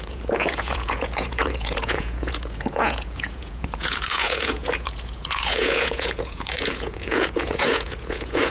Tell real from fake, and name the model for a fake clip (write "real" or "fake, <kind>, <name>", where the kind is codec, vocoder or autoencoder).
fake, vocoder, Vocos